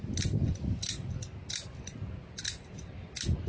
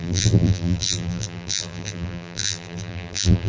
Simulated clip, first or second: second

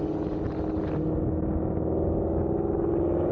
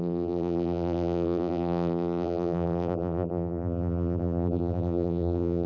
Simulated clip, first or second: second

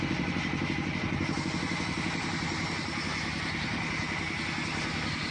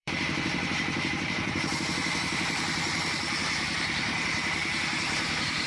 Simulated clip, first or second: second